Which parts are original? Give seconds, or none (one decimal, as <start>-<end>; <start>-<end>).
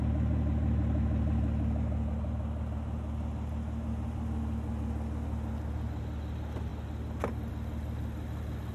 0.0-8.7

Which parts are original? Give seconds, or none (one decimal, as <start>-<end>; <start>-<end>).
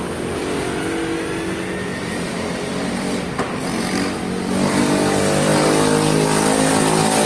0.0-7.3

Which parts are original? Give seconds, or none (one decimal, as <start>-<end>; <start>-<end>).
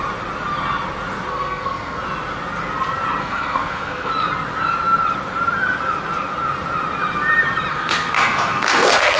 0.0-1.3; 2.0-3.2; 4.1-7.7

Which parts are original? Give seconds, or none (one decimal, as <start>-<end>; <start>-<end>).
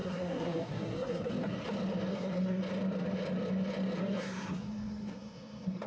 1.3-2.1; 2.6-4.0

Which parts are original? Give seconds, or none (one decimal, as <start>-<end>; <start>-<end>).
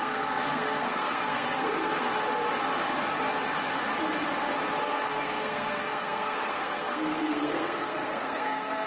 2.1-4.8